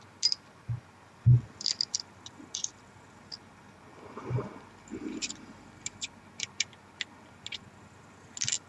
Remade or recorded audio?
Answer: recorded